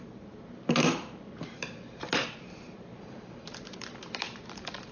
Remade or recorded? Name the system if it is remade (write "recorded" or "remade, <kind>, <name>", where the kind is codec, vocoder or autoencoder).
remade, vocoder, BigVGAN v2